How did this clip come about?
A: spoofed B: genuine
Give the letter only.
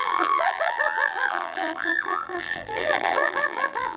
A